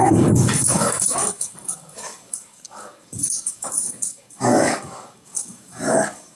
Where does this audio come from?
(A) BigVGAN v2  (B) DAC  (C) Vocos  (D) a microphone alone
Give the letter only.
B